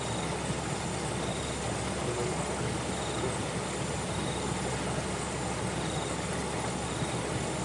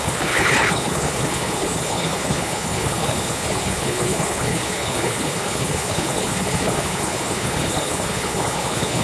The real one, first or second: first